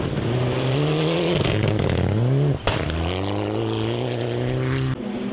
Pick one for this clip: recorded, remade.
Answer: recorded